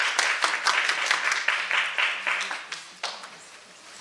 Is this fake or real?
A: real